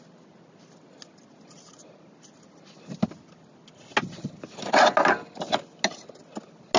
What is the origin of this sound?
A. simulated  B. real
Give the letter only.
B